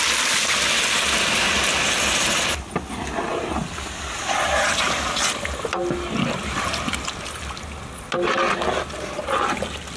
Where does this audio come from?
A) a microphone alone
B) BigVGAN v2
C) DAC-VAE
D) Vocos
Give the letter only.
A